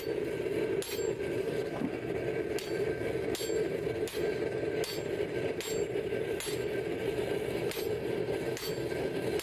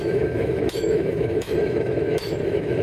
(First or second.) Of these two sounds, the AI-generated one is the second